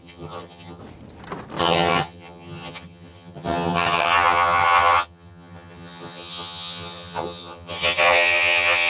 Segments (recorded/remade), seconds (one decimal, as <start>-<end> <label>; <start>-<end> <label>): 0.0-0.8 remade; 0.8-1.6 recorded; 1.6-8.9 remade